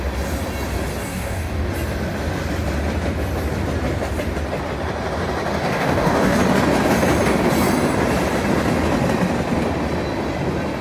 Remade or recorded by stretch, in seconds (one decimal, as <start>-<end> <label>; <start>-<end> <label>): 0.0-1.1 recorded; 1.1-1.7 remade; 1.7-5.6 recorded; 5.6-6.4 remade; 6.4-10.8 recorded